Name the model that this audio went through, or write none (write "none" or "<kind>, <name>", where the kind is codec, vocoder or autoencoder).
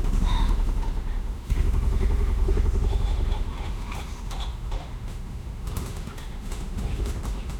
autoencoder, DAC-VAE